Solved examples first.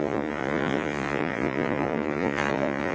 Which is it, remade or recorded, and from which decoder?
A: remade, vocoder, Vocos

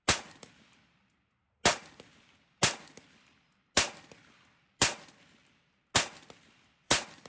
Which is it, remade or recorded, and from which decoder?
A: recorded